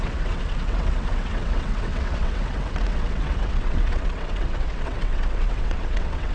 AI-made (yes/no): yes